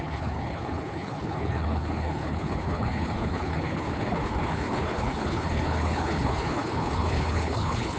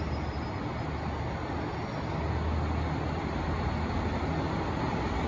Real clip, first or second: second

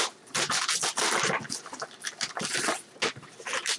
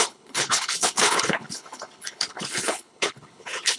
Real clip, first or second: first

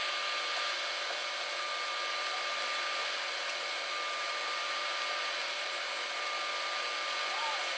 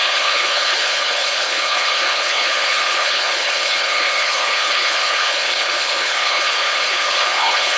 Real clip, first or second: first